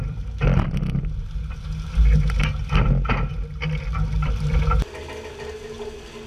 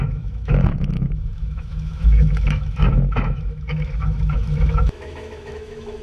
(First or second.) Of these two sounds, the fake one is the second